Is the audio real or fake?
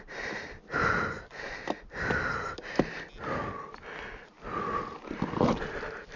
real